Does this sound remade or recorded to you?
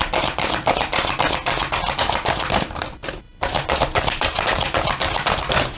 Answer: recorded